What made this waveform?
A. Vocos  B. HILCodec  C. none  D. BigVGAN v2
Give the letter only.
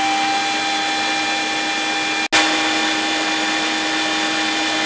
C